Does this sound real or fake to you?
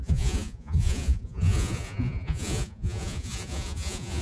fake